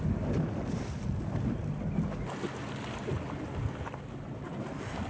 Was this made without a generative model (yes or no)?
yes